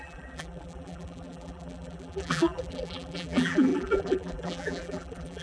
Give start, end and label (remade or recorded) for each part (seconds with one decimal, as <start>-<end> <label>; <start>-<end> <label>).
0.0-5.4 remade